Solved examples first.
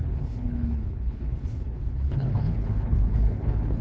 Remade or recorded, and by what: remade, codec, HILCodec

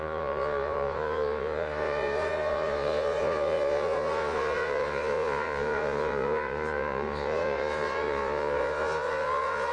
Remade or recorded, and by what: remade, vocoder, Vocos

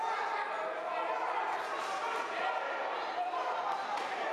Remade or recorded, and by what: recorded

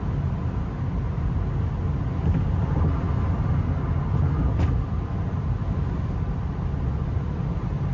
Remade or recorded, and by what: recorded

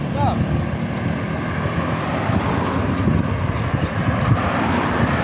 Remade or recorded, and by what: recorded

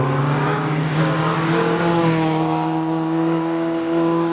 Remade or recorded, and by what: remade, codec, DAC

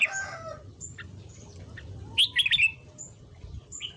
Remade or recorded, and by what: recorded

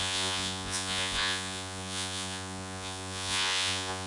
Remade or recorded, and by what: remade, vocoder, Vocos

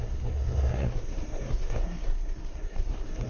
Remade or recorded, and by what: remade, codec, SNAC